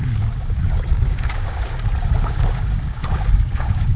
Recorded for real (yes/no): no